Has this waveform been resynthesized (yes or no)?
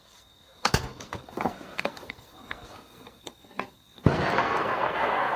yes